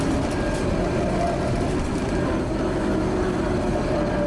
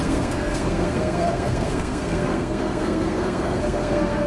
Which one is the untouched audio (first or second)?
first